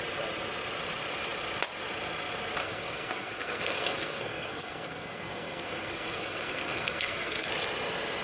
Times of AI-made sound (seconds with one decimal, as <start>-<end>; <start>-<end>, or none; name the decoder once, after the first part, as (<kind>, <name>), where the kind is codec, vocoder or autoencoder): 2.6-7.5 (codec, SNAC)